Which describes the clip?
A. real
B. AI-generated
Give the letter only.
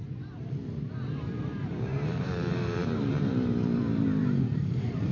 B